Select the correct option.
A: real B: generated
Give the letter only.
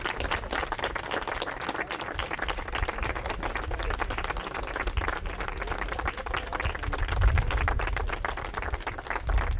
A